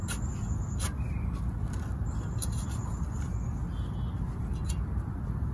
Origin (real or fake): real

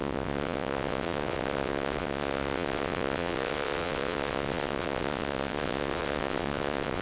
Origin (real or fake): fake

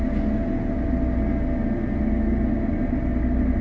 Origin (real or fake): real